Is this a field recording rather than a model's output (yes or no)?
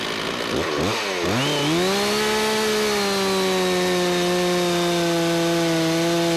yes